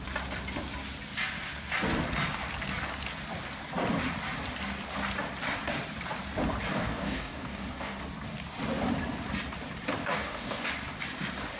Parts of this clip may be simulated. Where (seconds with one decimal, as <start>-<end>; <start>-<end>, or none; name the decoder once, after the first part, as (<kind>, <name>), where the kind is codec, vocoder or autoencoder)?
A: 6.7-8.0 (codec, DAC); 10.0-10.7